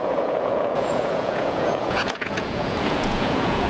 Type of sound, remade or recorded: remade